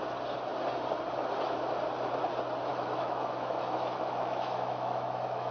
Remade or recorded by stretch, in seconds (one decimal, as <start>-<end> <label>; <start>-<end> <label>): 0.0-2.7 recorded; 2.7-5.5 remade